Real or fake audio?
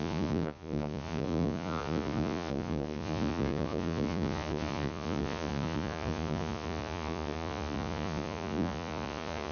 fake